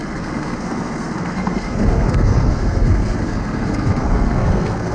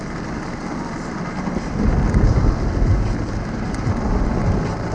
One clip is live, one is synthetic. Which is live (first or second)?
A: second